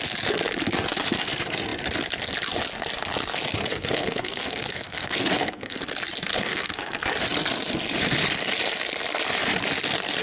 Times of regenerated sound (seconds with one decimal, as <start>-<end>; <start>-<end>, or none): 3.7-5.8; 6.3-7.1